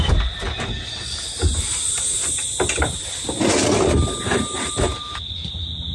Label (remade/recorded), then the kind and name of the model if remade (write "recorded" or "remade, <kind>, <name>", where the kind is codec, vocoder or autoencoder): recorded